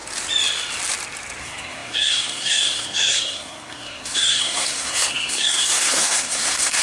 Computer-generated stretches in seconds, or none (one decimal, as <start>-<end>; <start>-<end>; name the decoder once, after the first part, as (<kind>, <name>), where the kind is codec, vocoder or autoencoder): 1.4-6.8 (codec, SNAC)